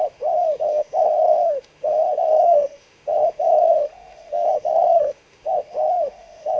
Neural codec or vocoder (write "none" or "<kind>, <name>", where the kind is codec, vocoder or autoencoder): autoencoder, DAC-VAE